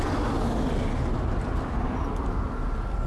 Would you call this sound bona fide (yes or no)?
yes